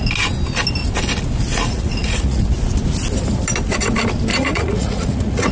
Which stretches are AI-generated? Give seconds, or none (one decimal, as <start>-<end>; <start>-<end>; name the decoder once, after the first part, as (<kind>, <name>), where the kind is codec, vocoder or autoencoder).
1.5-2.4 (vocoder, Vocos); 4.3-5.5